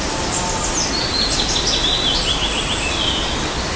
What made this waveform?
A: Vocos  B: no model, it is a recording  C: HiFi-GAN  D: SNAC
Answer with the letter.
B